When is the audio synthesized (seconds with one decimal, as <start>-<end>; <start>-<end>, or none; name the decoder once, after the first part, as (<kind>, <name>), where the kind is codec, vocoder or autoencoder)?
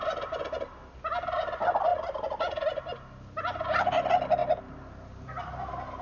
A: none